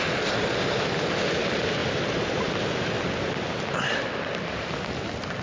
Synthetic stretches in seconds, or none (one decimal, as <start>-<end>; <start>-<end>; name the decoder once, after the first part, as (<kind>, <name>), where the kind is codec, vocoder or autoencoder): none